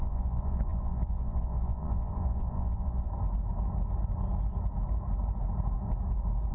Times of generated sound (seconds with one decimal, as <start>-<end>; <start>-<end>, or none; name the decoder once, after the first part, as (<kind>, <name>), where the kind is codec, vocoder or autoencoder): 0.0-3.1 (vocoder, Vocos)